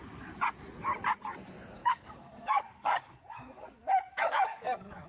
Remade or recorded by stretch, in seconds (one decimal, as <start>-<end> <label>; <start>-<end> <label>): 0.0-1.8 recorded; 1.8-5.1 remade